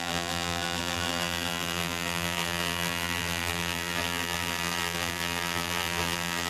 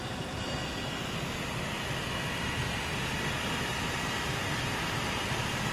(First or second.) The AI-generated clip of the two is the first